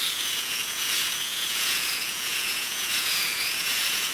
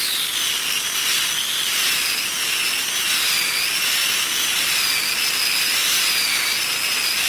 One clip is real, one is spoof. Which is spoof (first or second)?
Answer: first